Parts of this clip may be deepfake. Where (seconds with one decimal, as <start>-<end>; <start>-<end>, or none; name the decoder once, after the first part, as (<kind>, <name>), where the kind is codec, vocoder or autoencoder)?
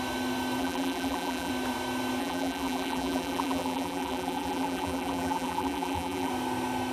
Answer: 0.6-1.5 (vocoder, BigVGAN v2); 2.2-6.3